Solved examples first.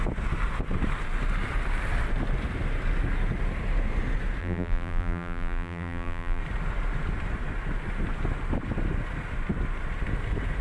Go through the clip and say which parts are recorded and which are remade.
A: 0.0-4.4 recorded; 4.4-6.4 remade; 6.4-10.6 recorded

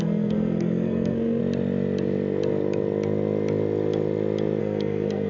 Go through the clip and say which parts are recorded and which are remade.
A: 0.0-1.4 remade; 1.4-4.6 recorded; 4.6-5.3 remade

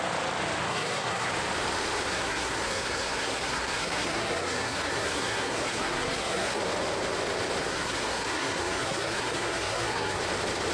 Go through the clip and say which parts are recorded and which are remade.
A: 0.0-0.7 recorded; 0.7-1.3 remade; 1.3-2.1 recorded; 2.1-6.6 remade; 6.6-7.6 recorded; 7.6-10.2 remade; 10.2-10.7 recorded

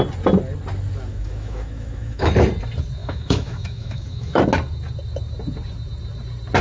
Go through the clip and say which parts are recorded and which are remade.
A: 0.0-1.1 recorded; 1.1-2.3 remade; 2.3-3.0 recorded; 3.0-4.4 remade; 4.4-6.6 recorded

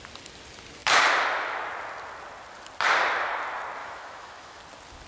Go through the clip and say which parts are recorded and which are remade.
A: 0.0-3.8 recorded; 3.8-4.6 remade; 4.6-5.1 recorded

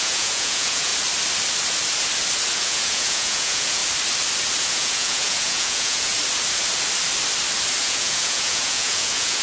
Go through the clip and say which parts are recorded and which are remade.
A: 0.0-0.9 remade; 0.9-2.6 recorded; 2.6-3.8 remade; 3.8-4.6 recorded; 4.6-6.1 remade; 6.1-7.8 recorded; 7.8-9.4 remade